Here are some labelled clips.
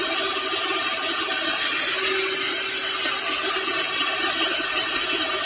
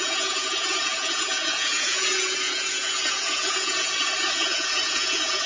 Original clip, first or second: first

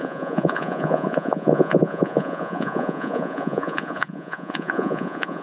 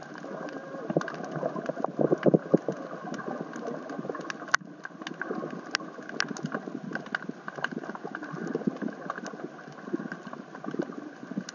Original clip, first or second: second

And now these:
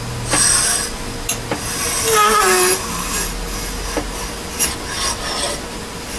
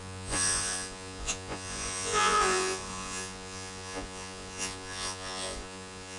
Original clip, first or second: first